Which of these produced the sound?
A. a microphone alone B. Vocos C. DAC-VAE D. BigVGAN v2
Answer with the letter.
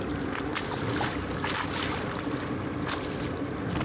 A